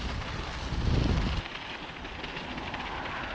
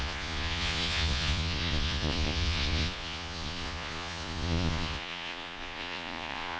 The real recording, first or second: first